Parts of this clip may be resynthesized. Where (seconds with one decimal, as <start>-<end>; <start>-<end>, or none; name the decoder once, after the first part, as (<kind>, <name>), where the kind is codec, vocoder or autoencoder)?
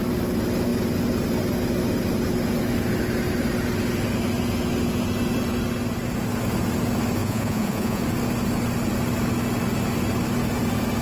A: 7.2-8.0 (vocoder, Vocos)